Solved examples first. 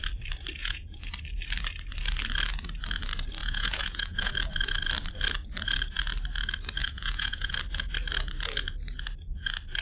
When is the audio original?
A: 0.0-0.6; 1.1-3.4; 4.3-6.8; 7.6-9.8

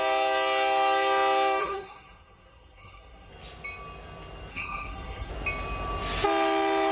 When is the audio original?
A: 0.0-1.6; 3.3-4.5; 5.3-6.9

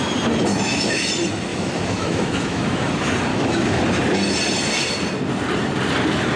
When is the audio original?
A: 0.0-0.5; 1.1-1.5; 2.9-3.3; 3.8-6.4

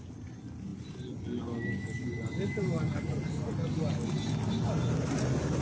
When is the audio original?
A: 0.0-5.6

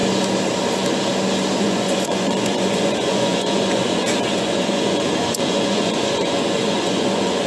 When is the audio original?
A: 0.0-1.6

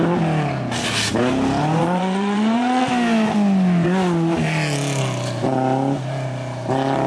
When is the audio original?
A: 0.0-1.8; 2.9-7.1

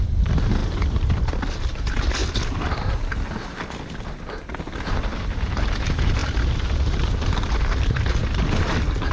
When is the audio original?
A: 2.2-4.8

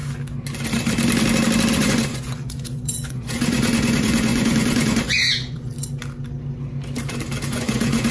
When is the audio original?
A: 0.0-1.7; 5.7-7.5